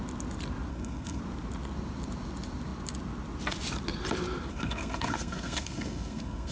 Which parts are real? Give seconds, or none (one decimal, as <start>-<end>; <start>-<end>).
0.0-0.7; 1.2-4.5